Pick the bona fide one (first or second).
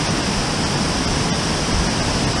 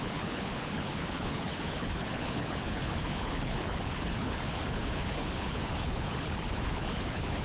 first